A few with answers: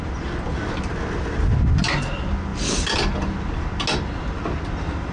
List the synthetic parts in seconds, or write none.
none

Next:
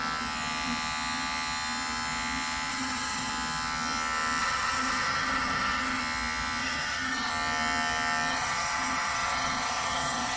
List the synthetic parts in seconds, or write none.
2.7-3.3 (vocoder, HiFi-GAN); 4.4-6.0; 6.6-7.3; 8.3-10.4

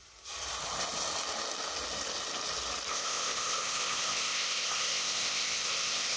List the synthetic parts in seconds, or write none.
2.9-6.2 (codec, ZipCodec)

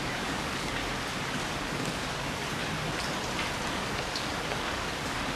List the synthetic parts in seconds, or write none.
0.0-0.8 (codec, DAC); 1.8-2.6; 3.7-5.4